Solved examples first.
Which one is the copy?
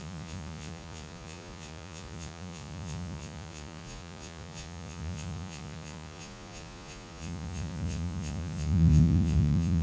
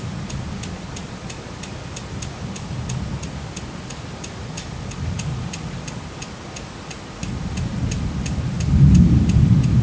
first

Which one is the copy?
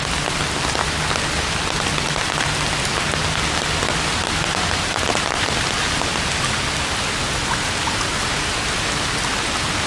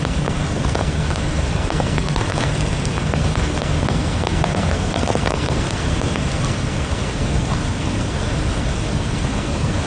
second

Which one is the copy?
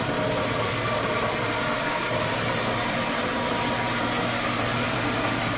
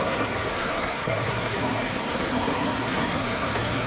second